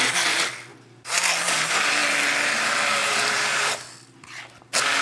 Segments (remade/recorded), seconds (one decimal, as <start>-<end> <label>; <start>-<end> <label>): 0.0-0.7 recorded; 0.7-1.3 remade; 1.3-3.0 recorded; 3.0-3.7 remade; 3.7-5.0 recorded